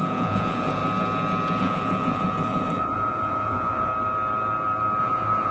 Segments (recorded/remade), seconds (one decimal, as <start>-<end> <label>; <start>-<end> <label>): 0.0-0.8 remade; 0.8-1.6 recorded; 1.6-3.9 remade; 3.9-5.0 recorded; 5.0-5.5 remade